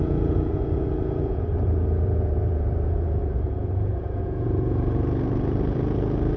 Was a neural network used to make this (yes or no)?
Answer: yes